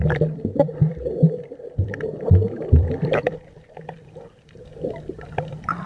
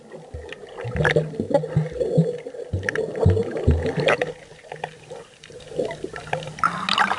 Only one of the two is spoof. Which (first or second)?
first